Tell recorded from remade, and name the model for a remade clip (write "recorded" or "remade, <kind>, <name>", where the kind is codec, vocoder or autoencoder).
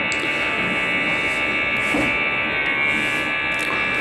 recorded